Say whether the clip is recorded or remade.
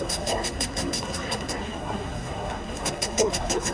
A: remade